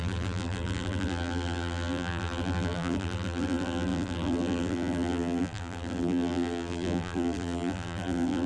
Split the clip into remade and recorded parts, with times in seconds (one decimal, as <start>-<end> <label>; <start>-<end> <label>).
0.0-8.5 remade